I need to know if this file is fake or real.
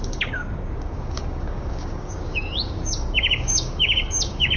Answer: fake